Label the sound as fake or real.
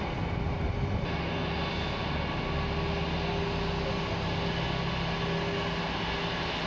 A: real